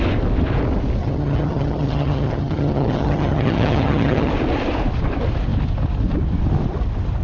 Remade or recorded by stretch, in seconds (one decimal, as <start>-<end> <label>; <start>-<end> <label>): 0.0-1.0 recorded; 1.0-4.3 remade; 4.3-7.2 recorded